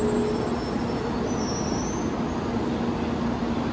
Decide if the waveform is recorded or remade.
recorded